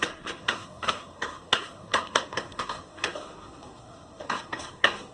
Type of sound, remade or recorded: remade